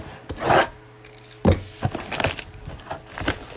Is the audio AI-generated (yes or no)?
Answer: no